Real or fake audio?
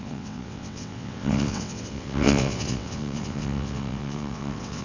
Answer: fake